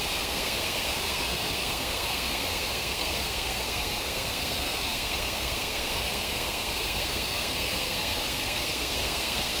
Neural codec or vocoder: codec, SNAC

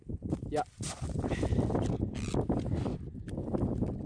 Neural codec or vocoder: vocoder, BigVGAN v2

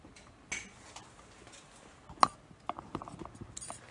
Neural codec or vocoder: none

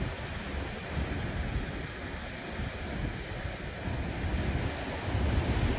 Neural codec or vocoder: none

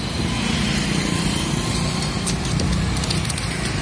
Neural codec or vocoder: none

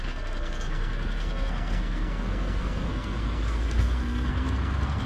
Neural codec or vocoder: codec, SNAC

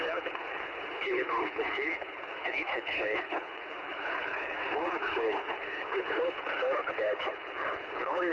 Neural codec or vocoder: codec, HILCodec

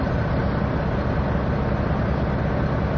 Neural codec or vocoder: none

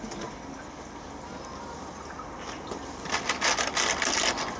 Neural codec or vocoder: none